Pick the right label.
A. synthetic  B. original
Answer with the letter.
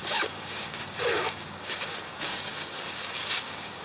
A